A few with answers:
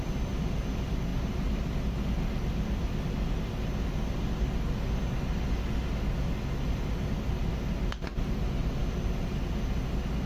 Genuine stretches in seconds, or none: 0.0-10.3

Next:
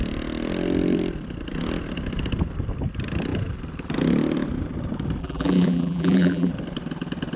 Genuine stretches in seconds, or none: 0.0-5.2; 6.5-7.4

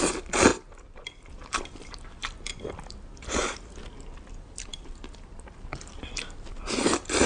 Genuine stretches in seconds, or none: 0.5-1.3; 2.2-4.3; 4.7-5.9

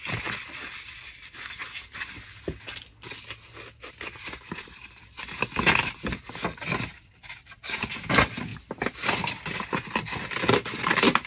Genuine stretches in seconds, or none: 0.0-11.3

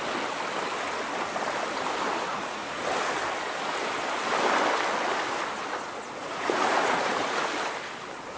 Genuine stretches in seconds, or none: 0.0-2.3; 2.8-6.2; 7.5-8.4